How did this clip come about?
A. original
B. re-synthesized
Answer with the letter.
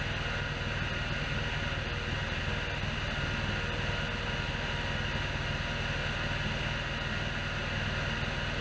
A